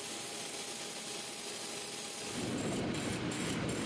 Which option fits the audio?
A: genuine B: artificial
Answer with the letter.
A